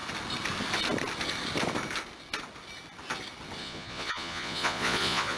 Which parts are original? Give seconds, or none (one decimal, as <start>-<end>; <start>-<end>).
0.0-3.6